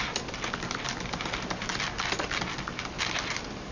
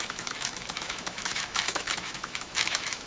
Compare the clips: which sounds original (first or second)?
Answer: first